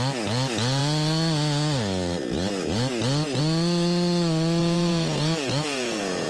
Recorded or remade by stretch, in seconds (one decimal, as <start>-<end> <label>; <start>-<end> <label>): 0.0-4.6 recorded; 4.6-6.3 remade